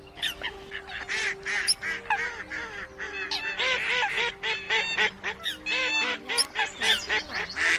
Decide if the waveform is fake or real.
real